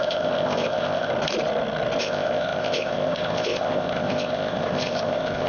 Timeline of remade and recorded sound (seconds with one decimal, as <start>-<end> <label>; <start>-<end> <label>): 0.0-1.1 remade; 1.1-2.0 recorded; 2.0-5.5 remade